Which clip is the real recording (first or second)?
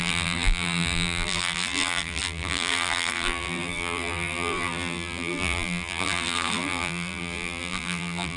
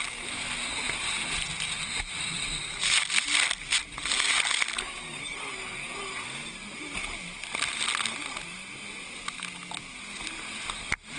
second